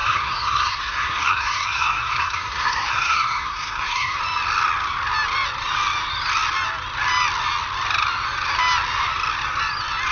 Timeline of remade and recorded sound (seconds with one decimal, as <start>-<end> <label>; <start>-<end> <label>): 0.0-4.2 remade; 4.2-10.1 recorded